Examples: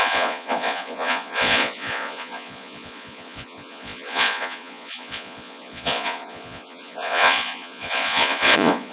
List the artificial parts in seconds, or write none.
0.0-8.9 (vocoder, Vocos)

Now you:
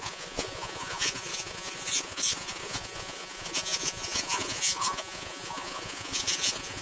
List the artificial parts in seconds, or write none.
0.0-6.8 (vocoder, Vocos)